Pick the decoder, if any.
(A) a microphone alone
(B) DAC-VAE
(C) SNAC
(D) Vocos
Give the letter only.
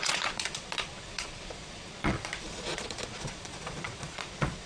D